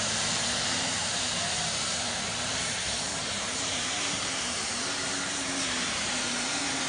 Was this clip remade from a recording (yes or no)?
yes